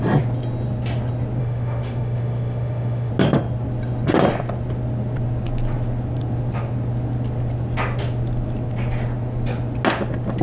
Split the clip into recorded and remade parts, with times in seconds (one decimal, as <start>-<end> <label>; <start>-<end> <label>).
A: 0.0-1.4 recorded; 1.4-3.1 remade; 3.1-10.4 recorded